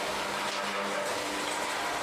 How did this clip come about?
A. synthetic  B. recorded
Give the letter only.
B